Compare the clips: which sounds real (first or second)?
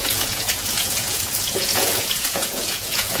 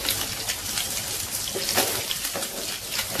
second